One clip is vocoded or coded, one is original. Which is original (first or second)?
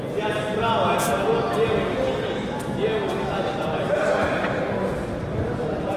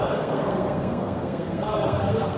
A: first